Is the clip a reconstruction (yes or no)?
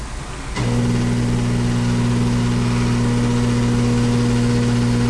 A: no